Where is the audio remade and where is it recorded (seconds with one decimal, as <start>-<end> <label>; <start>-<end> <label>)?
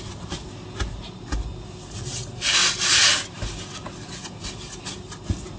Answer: 0.0-5.6 recorded